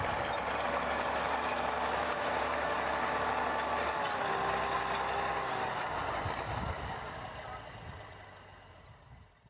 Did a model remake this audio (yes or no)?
no